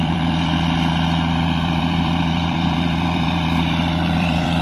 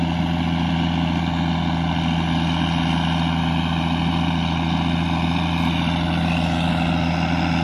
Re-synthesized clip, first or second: first